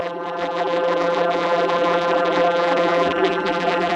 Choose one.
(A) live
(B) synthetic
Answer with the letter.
B